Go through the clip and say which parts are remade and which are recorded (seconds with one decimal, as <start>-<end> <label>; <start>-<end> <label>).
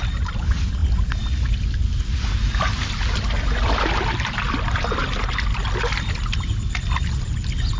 0.0-7.8 recorded